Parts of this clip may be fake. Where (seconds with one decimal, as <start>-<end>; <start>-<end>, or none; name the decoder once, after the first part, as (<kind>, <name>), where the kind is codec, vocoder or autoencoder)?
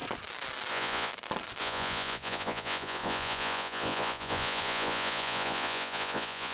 0.7-1.1 (vocoder, Vocos); 1.6-6.5